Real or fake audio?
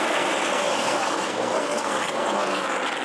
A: fake